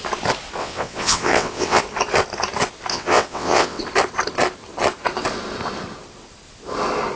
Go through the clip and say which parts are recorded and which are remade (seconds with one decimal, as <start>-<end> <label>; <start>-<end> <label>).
0.0-0.6 recorded; 0.6-1.8 remade; 1.8-2.9 recorded; 2.9-3.8 remade; 3.8-7.2 recorded